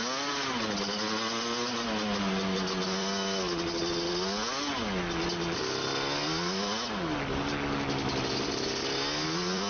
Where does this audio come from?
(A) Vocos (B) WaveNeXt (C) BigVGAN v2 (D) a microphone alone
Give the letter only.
D